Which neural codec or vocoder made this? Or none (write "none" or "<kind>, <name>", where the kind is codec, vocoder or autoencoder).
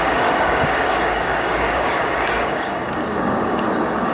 codec, DAC